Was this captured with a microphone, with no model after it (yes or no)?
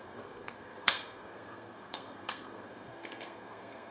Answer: no